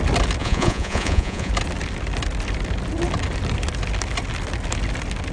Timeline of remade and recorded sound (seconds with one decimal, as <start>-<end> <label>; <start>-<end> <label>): 0.0-0.4 recorded; 0.4-1.5 remade; 1.5-5.3 recorded